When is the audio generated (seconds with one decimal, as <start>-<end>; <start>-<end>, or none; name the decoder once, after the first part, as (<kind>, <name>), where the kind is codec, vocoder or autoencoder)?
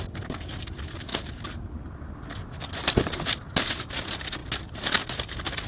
none